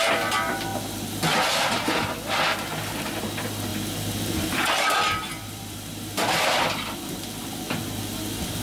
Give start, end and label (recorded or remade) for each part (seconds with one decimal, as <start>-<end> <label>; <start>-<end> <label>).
0.0-3.7 recorded; 3.7-7.0 remade; 7.0-8.6 recorded